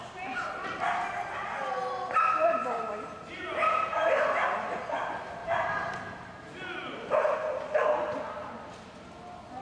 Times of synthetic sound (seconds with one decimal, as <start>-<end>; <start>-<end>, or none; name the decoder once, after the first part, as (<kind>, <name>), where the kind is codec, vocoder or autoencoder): 5.4-6.0 (vocoder, BigVGAN v2)